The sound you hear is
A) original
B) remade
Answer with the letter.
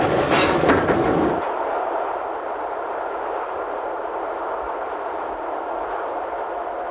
A